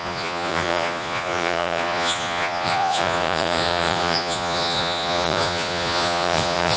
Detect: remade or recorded remade